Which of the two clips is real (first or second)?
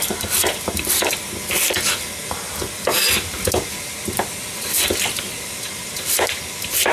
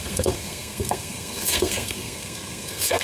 first